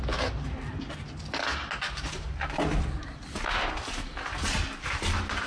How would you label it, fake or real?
real